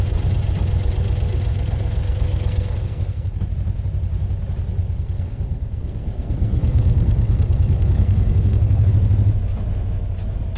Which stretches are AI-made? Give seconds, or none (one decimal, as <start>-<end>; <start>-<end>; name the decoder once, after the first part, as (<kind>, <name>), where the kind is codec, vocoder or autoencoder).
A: 1.5-3.4 (codec, SNAC); 4.8-8.9